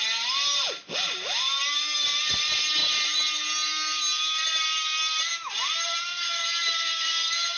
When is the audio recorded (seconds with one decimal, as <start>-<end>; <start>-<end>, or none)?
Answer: 0.0-0.5; 1.6-2.8; 3.4-5.3; 6.4-7.6